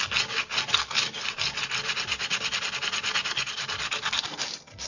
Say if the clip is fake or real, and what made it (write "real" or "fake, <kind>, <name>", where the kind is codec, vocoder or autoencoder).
real